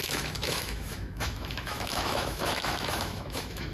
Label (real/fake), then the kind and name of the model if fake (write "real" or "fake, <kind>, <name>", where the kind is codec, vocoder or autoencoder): fake, autoencoder, DAC-VAE